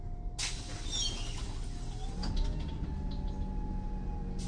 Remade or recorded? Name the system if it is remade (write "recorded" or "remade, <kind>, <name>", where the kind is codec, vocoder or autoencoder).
recorded